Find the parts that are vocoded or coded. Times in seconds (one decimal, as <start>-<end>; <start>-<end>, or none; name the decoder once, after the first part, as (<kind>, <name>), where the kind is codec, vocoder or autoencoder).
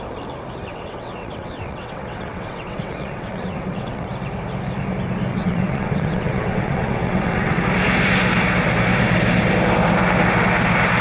0.7-4.1 (vocoder, WaveNeXt); 5.3-7.6